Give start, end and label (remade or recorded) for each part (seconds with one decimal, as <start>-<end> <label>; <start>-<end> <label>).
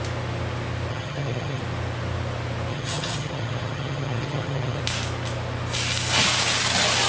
0.0-0.9 recorded; 0.9-1.6 remade; 1.6-2.7 recorded; 2.7-4.8 remade; 4.8-7.1 recorded